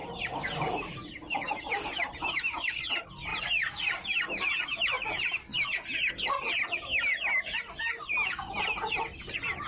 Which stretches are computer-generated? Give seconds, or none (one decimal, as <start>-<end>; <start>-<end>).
0.0-2.7; 3.3-4.6